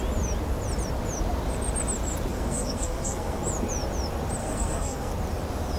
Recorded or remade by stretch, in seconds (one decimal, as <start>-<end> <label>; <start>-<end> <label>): 0.0-2.3 recorded; 2.3-3.4 remade; 3.4-4.4 recorded; 4.4-5.1 remade; 5.1-5.8 recorded